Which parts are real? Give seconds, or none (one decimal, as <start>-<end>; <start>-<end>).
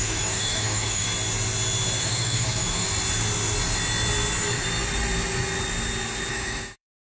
1.1-2.0; 2.8-6.3